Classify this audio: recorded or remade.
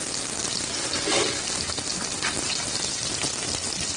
recorded